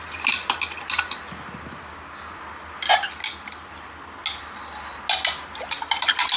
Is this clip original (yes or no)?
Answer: yes